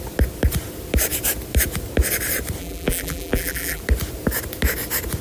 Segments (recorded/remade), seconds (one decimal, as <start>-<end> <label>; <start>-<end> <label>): 0.0-2.6 recorded; 2.6-3.8 remade; 3.8-5.2 recorded